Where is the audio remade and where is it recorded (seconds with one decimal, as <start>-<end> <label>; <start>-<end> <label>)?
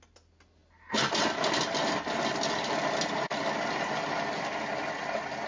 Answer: 0.0-5.5 recorded